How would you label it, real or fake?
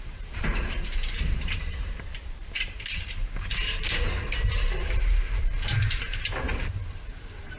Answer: fake